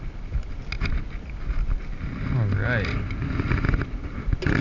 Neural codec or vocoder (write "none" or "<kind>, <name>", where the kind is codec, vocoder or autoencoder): none